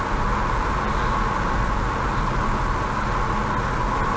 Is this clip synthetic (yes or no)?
no